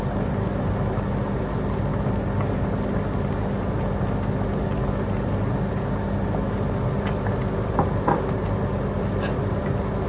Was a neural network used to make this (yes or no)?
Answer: no